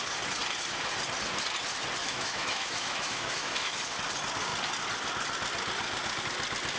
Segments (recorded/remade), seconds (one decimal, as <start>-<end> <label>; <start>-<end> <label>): 0.0-2.0 recorded; 2.0-3.8 remade; 3.8-6.8 recorded